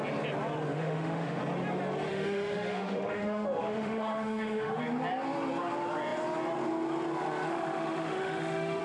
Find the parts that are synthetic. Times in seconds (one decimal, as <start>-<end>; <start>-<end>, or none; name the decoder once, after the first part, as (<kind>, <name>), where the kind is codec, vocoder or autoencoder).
0.7-1.4 (autoencoder, DAC-VAE); 2.1-4.8; 7.5-8.8